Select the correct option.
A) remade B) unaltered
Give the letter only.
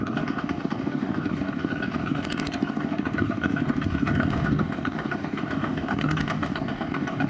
A